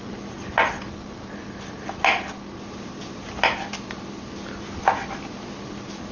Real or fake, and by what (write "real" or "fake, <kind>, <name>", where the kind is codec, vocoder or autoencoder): real